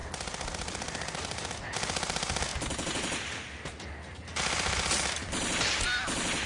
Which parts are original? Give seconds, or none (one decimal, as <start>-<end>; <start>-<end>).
0.0-6.5